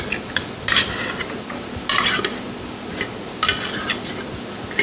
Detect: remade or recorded recorded